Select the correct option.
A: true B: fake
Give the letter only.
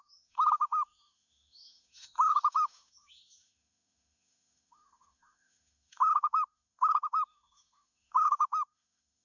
B